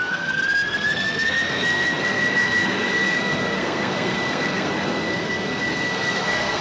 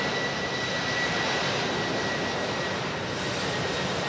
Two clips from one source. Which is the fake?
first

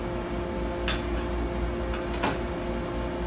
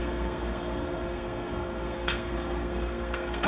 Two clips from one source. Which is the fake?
second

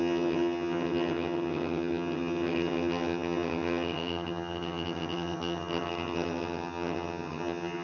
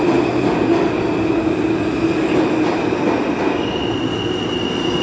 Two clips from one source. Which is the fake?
first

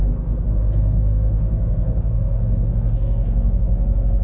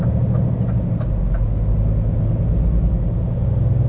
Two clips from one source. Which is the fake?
first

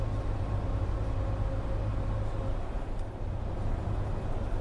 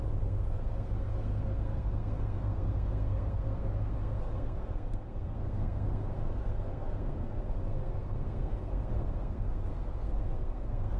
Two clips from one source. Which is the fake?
second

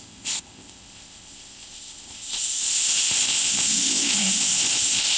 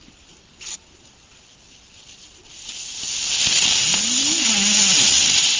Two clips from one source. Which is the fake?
first